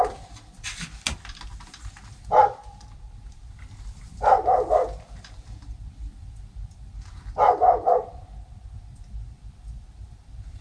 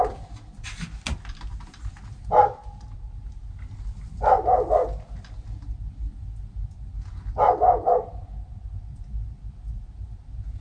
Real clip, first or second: second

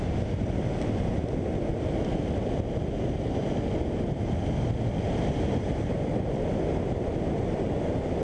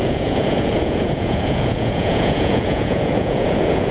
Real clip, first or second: first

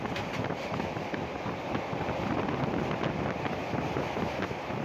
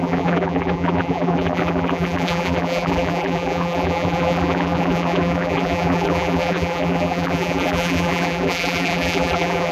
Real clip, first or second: first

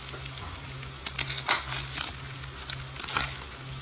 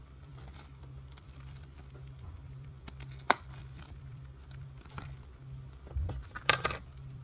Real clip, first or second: first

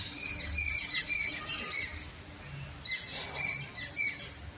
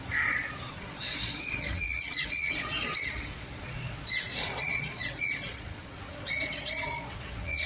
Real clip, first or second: first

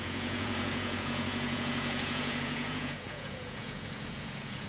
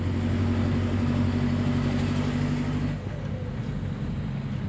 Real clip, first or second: second